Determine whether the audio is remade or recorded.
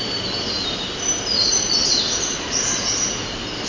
recorded